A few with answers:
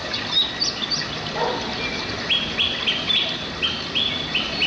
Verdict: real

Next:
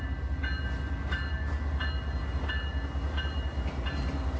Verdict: real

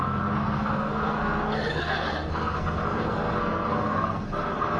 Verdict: fake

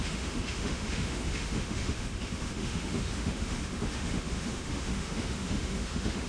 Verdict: fake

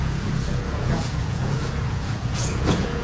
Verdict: fake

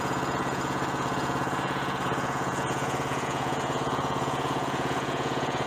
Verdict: fake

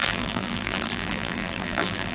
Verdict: fake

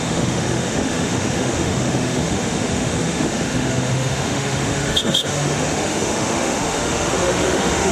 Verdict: fake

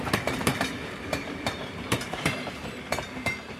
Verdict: fake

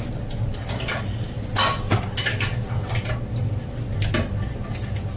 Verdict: real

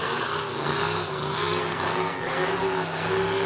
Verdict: fake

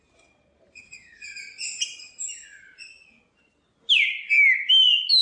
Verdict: real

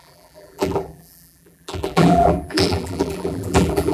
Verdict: fake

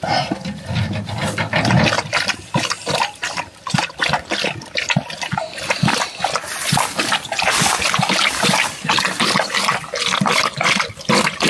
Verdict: fake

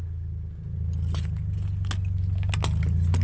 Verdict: real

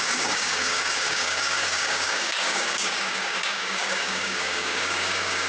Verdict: fake